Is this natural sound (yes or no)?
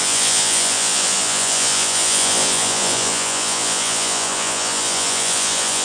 no